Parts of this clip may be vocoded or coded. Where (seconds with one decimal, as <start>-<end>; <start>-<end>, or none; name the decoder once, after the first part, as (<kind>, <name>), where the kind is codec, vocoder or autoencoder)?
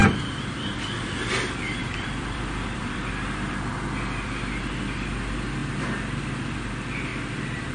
0.0-0.9 (vocoder, BigVGAN v2); 1.8-3.1; 5.6-6.6; 7.1-7.7